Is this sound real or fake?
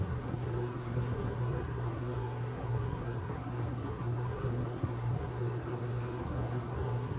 fake